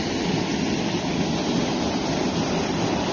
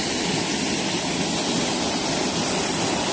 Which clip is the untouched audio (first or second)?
first